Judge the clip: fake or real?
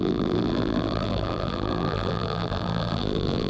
fake